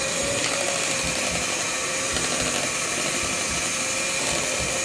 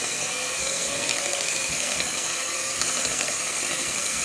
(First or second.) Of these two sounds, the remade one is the second